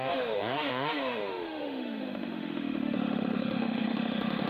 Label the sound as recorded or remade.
remade